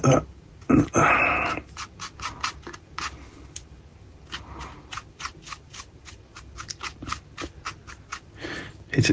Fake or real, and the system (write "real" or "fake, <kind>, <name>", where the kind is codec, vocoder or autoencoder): real